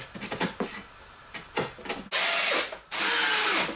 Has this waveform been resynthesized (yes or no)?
no